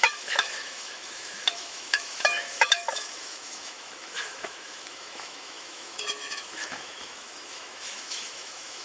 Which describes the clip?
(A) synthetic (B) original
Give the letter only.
A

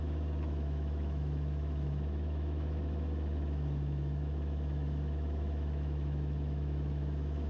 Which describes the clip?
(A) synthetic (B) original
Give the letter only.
A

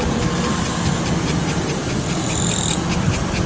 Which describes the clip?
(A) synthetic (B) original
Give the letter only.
B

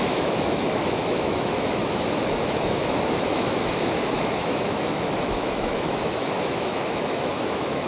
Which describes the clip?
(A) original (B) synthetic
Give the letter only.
B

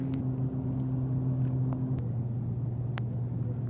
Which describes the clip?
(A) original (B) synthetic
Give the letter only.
A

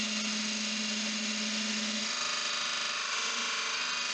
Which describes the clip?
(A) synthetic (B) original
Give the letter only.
B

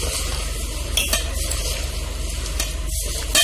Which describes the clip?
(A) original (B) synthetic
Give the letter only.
A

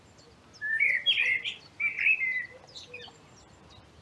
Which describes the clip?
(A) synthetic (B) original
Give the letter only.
B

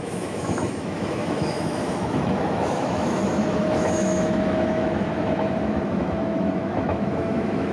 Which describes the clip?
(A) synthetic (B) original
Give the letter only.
A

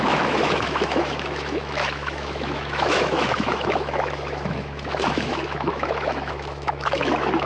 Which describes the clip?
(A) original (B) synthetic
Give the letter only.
B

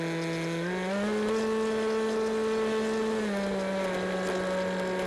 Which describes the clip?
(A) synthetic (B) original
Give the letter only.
B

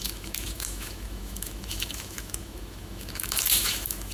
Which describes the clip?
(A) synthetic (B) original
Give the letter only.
A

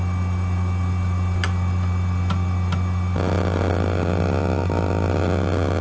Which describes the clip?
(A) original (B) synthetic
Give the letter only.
A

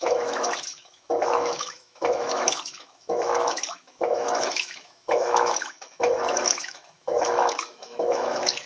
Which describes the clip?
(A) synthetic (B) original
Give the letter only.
A